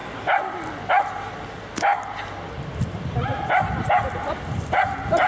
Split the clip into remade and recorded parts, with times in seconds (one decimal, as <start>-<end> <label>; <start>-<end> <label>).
0.0-5.3 recorded